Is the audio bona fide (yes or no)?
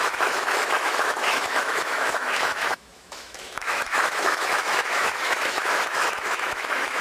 no